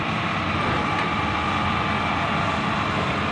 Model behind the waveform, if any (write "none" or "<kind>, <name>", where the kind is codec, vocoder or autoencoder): none